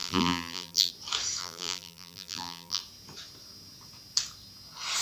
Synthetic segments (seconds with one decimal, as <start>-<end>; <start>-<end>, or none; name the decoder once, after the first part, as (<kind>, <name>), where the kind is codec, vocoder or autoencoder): 0.0-0.9 (vocoder, BigVGAN v2); 1.4-2.8